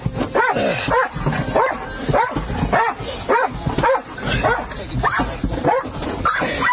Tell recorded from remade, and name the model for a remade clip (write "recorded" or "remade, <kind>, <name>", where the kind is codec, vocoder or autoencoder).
recorded